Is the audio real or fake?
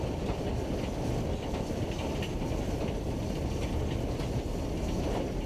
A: real